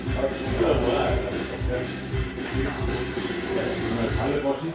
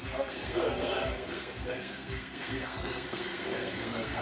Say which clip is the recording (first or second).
first